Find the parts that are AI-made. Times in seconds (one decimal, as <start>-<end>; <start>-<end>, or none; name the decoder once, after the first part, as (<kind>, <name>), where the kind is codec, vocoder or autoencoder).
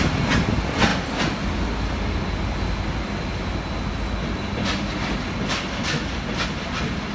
none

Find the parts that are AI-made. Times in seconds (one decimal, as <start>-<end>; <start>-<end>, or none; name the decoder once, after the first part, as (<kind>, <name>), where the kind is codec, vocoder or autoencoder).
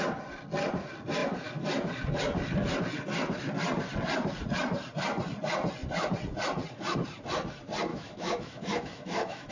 7.9-9.5 (autoencoder, DAC-VAE)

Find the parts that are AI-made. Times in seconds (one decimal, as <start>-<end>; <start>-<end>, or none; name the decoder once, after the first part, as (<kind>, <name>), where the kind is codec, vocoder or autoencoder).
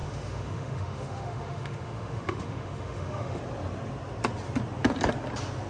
0.0-3.4 (autoencoder, DAC-VAE)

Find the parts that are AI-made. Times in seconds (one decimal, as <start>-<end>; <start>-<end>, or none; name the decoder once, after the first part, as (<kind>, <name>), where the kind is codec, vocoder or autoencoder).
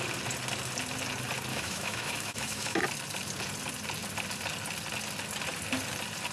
1.5-2.8 (autoencoder, DAC-VAE)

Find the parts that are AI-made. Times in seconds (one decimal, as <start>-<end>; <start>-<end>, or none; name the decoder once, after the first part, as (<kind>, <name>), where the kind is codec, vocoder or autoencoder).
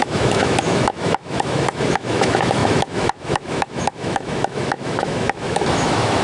0.0-6.2 (autoencoder, DAC-VAE)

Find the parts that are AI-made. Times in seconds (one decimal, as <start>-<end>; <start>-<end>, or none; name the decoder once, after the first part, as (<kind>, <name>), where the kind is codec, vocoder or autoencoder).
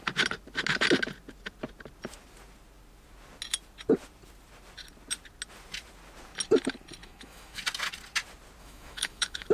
7.0-7.6 (autoencoder, DAC-VAE); 8.6-9.5